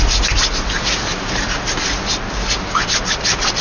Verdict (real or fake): real